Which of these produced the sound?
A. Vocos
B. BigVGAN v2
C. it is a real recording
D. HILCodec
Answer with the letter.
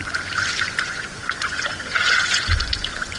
A